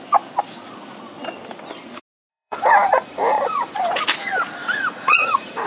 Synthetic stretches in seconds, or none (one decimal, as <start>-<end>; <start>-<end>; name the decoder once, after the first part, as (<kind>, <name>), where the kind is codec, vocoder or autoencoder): 2.3-3.7 (vocoder, Vocos); 4.6-5.7